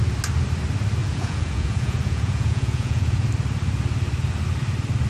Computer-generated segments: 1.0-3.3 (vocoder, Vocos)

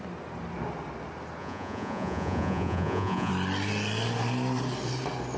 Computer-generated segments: 1.4-3.3 (vocoder, Vocos)

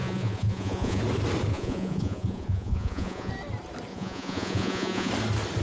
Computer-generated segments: 0.0-1.0 (vocoder, Vocos); 1.5-3.3; 3.9-5.1